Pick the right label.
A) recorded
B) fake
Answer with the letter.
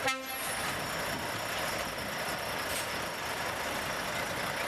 A